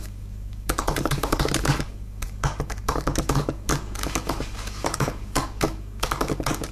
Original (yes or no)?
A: no